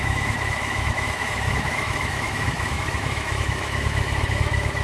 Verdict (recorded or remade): remade